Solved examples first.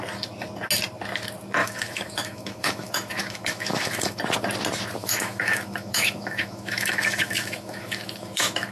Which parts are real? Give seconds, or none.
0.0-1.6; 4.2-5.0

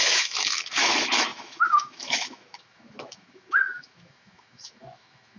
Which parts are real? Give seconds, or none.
none

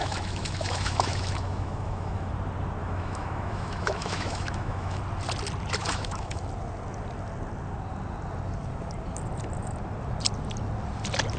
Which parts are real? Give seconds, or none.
2.3-2.8; 5.0-5.8; 6.4-11.4